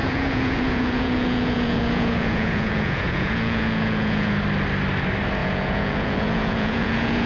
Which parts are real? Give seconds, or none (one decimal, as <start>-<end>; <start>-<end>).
4.4-5.4